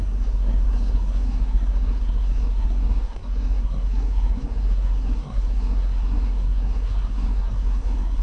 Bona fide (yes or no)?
no